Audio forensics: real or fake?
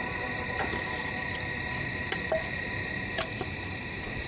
fake